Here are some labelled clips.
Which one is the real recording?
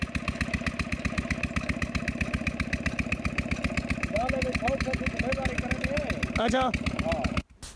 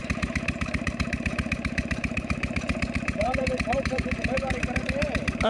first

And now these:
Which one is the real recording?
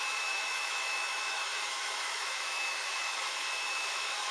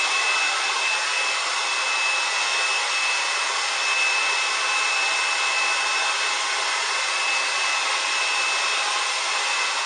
second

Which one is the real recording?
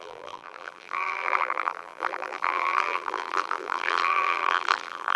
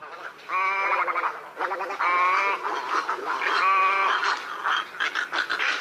second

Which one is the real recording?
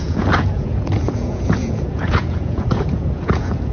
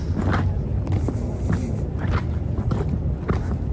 second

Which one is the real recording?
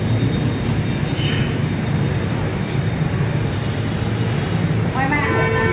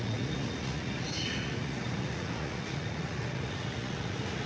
first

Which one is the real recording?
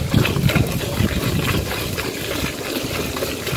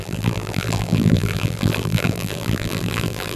first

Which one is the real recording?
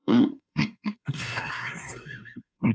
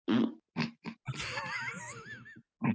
second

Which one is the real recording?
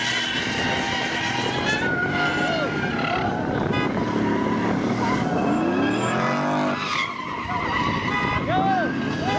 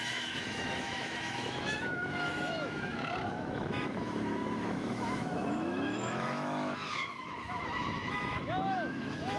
first